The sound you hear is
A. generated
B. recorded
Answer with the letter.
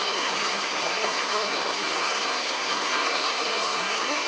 A